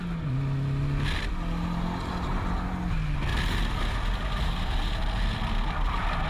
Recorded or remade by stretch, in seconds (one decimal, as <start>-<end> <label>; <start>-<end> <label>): 0.0-6.3 recorded